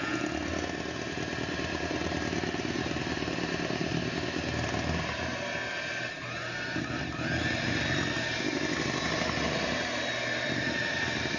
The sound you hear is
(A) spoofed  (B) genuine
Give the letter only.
B